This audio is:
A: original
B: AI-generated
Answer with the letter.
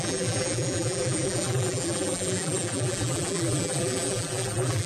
B